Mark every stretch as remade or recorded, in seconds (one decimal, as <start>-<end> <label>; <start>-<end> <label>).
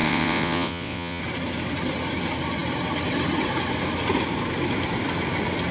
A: 0.0-1.2 remade; 1.2-5.7 recorded